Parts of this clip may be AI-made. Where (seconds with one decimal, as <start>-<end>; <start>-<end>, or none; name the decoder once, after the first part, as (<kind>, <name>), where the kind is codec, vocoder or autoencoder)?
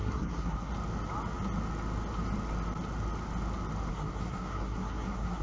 0.0-0.7 (codec, SNAC); 3.9-5.4